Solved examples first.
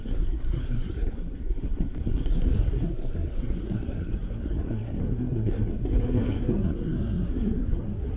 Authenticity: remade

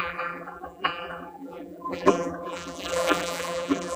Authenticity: remade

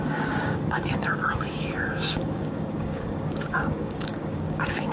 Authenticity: remade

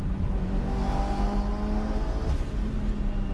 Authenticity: recorded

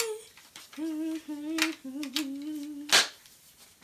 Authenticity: recorded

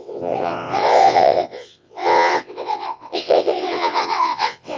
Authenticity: remade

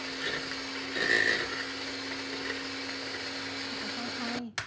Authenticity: recorded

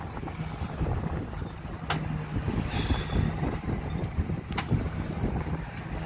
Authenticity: recorded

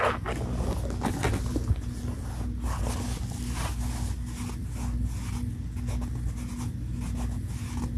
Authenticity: recorded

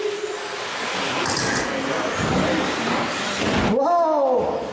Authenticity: recorded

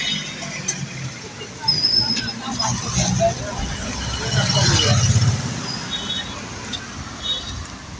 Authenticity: recorded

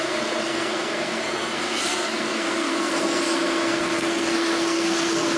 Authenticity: remade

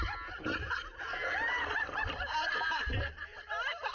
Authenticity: recorded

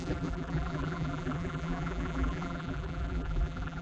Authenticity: remade